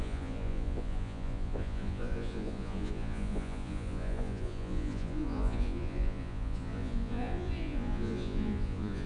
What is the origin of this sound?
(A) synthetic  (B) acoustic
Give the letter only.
A